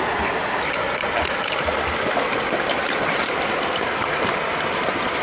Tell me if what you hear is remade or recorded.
recorded